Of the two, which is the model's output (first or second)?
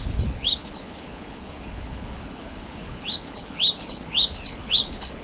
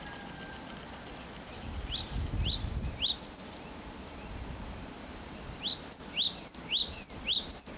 first